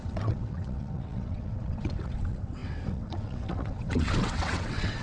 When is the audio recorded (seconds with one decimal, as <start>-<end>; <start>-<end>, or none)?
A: none